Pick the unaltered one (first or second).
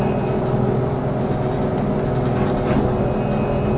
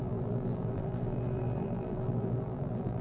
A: first